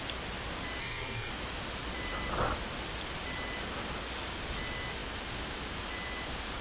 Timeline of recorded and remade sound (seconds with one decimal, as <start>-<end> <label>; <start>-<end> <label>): 0.0-0.8 recorded; 0.8-1.3 remade; 1.3-6.6 recorded